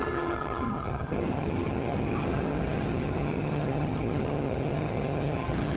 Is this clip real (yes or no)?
no